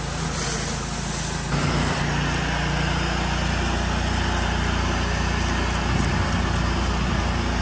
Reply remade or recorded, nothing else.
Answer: recorded